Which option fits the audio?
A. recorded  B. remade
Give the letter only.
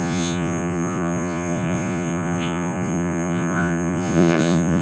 B